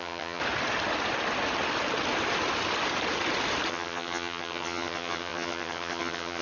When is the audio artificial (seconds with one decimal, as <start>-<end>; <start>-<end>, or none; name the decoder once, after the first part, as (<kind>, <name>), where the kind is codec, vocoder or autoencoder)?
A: 0.0-0.4 (vocoder, HiFi-GAN); 3.7-6.4